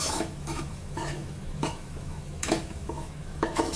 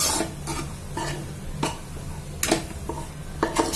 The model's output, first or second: first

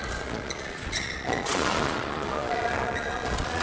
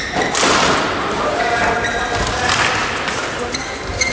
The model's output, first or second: first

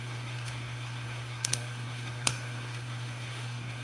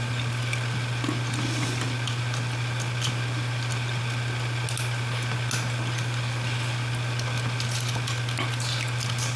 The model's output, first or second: first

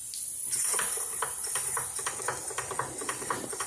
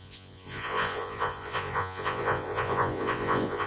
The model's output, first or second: second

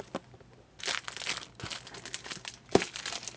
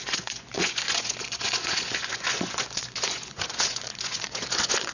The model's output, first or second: second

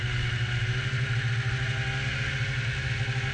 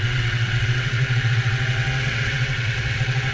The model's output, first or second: second